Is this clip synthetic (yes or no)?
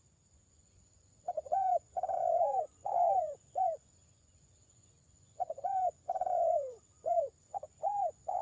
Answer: yes